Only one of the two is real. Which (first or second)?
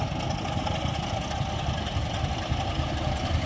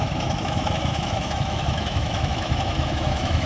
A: first